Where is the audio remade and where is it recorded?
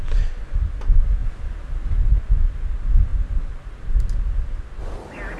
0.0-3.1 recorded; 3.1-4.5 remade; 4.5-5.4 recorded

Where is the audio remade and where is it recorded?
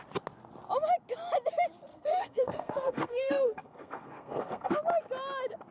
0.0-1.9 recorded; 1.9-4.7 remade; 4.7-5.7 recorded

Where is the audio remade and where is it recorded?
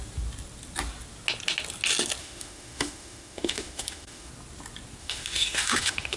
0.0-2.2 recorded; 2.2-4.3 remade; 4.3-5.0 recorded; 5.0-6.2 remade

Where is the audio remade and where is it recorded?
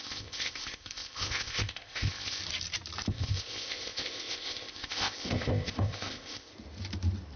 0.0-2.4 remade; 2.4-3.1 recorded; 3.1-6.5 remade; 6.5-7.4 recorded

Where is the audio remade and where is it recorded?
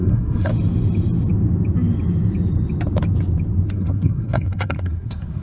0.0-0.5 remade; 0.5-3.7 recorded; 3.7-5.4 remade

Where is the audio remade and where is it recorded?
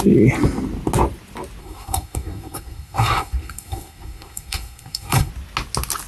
0.0-1.6 recorded; 1.6-5.3 remade; 5.3-6.1 recorded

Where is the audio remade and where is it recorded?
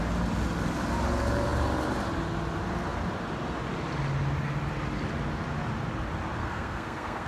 0.0-6.4 recorded; 6.4-7.3 remade